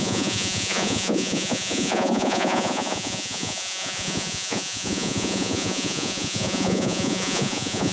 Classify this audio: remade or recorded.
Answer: remade